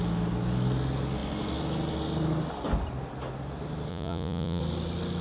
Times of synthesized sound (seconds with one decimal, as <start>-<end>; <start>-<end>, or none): 3.9-4.6